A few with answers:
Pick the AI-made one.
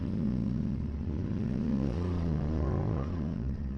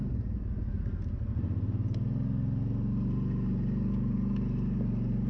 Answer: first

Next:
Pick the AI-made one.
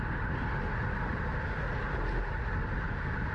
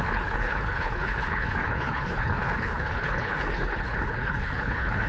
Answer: second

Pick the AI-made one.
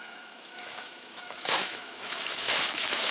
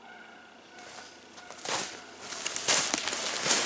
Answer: first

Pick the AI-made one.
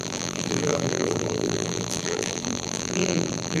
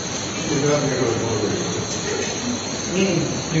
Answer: first